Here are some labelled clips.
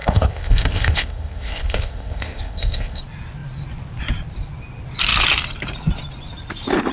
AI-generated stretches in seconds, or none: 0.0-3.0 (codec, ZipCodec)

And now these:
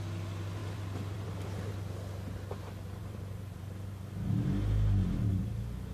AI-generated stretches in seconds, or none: 0.6-1.7 (vocoder, BigVGAN v2); 3.0-3.6